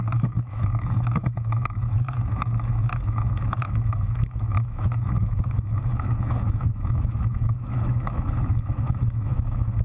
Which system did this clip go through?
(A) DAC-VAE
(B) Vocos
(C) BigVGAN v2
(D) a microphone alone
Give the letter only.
A